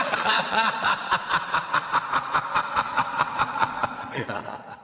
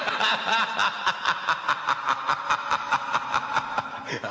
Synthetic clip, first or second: first